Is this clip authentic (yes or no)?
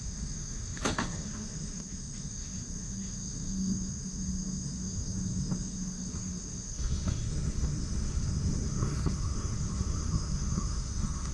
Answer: no